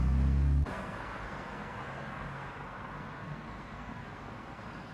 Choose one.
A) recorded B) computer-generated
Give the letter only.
B